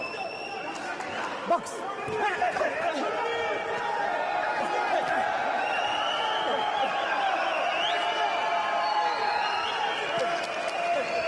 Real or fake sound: real